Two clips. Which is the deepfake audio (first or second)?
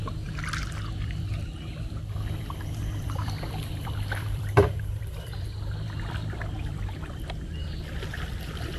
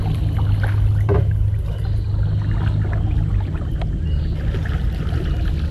first